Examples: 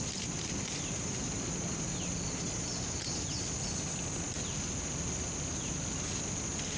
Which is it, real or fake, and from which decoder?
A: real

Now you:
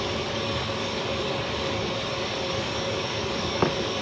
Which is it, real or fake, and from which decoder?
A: fake, codec, DAC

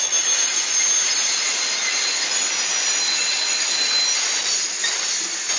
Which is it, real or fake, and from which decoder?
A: real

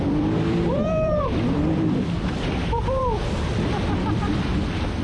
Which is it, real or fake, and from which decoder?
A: fake, vocoder, BigVGAN v2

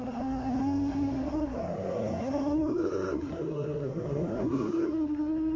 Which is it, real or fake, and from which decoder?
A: fake, codec, SNAC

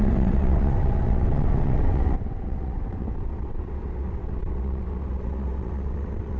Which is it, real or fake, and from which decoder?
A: fake, vocoder, WaveNeXt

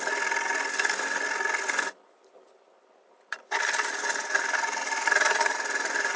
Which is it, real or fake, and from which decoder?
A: fake, vocoder, BigVGAN v2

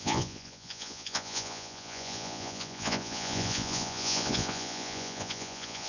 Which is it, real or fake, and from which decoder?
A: fake, vocoder, Vocos